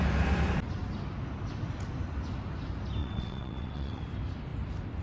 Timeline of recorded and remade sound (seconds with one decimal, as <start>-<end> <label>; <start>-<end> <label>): 0.0-3.0 recorded; 3.0-4.0 remade; 4.0-5.0 recorded